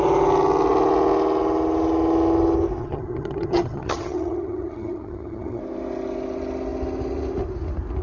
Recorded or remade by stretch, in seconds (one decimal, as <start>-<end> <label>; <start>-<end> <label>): 0.0-2.8 recorded; 2.8-5.6 remade; 5.6-8.0 recorded